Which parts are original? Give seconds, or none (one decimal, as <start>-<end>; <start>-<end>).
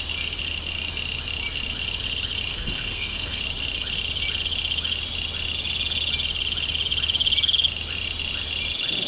0.0-2.5; 3.4-9.1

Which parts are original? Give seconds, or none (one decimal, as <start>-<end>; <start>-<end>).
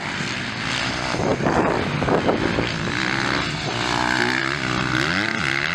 0.0-5.7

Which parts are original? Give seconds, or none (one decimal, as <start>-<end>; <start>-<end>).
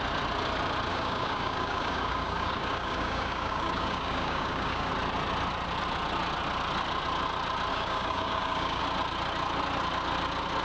0.0-0.9; 4.9-7.7; 8.8-10.6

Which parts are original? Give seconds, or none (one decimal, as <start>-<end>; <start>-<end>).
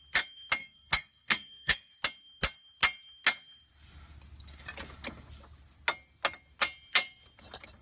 0.0-0.6; 1.9-7.8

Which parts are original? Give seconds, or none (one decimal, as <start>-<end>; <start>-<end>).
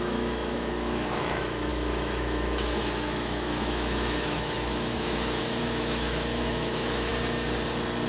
7.1-8.1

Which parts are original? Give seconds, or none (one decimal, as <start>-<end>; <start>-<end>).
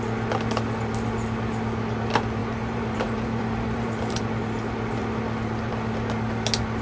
0.0-2.4; 4.2-6.8